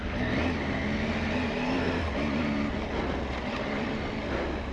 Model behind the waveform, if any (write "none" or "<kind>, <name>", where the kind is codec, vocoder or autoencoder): none